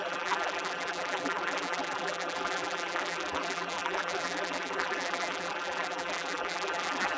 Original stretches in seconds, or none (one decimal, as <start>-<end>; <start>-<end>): none